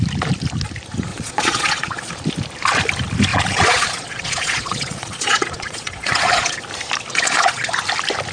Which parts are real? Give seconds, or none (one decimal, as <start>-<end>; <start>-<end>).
0.0-1.1; 2.1-3.3; 6.6-7.1; 7.7-8.3